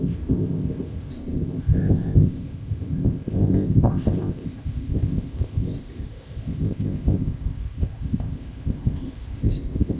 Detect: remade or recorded remade